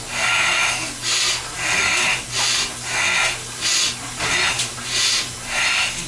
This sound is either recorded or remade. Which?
recorded